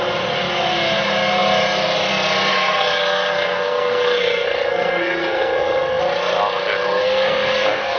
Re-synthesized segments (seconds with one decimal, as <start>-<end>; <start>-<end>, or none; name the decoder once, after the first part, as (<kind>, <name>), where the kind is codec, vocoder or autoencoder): 2.5-6.0 (codec, SNAC); 7.0-8.0